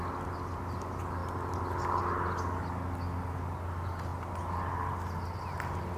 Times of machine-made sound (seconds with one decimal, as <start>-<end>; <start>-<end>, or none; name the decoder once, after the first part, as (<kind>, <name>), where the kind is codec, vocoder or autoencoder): none